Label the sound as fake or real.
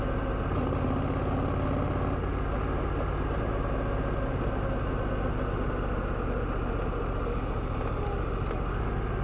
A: real